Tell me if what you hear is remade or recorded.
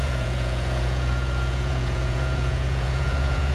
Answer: remade